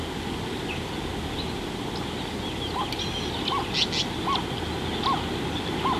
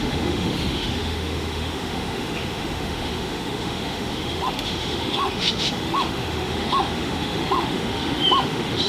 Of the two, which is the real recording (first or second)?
first